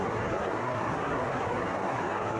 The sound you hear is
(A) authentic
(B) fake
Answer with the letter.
B